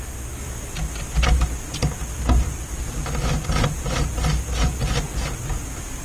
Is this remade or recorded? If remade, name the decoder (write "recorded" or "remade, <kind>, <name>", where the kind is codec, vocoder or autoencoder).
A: recorded